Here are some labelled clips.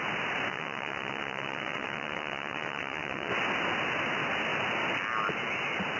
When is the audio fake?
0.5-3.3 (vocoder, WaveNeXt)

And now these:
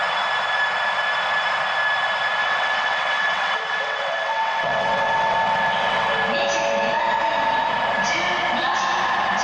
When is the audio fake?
2.4-6.1 (vocoder, WaveNeXt)